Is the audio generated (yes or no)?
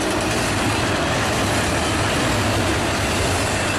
no